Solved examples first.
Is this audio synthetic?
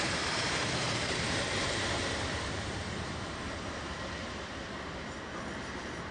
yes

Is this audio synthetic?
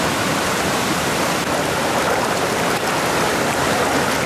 no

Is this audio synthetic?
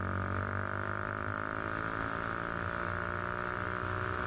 no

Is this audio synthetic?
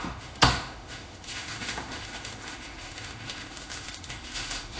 yes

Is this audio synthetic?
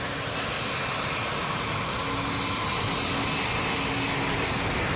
no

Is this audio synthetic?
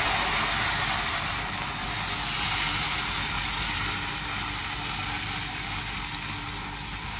no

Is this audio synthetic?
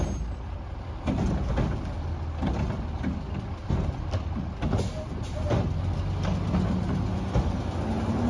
no